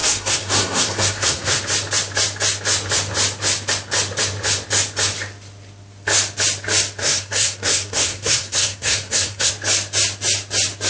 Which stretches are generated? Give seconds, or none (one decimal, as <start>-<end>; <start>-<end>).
0.0-1.6; 7.0-9.5